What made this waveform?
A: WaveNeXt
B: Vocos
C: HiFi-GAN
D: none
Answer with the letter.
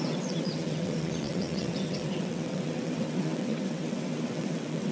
A